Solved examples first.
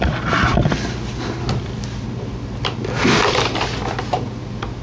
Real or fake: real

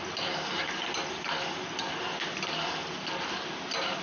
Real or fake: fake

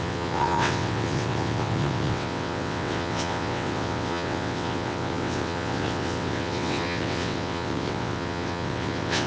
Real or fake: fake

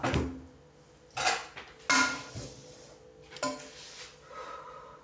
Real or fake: real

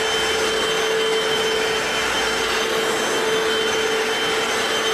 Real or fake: real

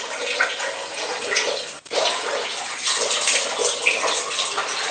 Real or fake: real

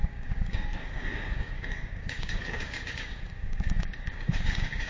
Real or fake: fake